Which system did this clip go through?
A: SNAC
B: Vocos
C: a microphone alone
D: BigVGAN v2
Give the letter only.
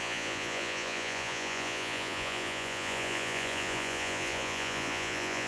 B